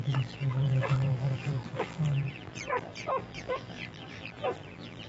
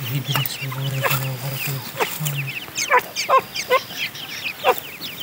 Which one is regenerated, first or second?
first